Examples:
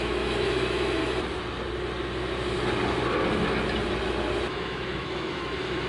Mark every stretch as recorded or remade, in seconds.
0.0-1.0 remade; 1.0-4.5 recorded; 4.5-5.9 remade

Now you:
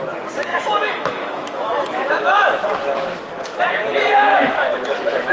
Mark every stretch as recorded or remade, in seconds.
0.0-0.5 recorded; 0.5-3.6 remade; 3.6-4.3 recorded; 4.3-5.3 remade

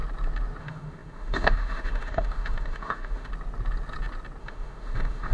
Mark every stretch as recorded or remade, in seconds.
0.0-0.6 recorded; 0.6-3.3 remade; 3.3-4.4 recorded; 4.4-5.3 remade

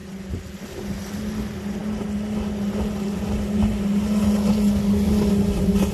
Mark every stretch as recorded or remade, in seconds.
0.0-5.9 recorded

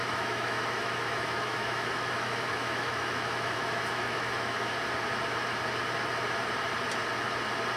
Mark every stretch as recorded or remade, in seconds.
0.0-4.7 remade; 4.7-7.8 recorded

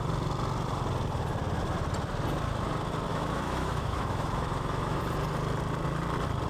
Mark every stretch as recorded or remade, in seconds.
0.0-3.1 recorded; 3.1-5.0 remade; 5.0-6.5 recorded

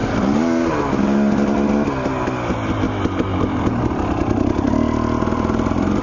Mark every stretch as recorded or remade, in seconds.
0.0-6.0 recorded